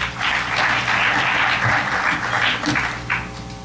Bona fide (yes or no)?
yes